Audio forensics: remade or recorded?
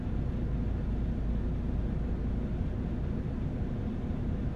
recorded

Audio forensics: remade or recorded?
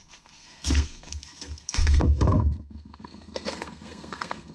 remade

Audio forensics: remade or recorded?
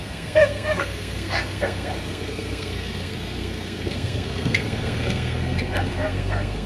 remade